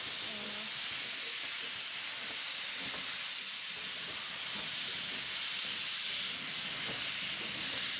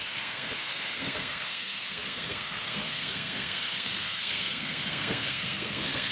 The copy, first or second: second